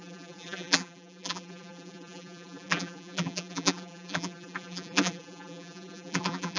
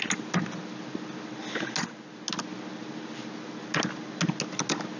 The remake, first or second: first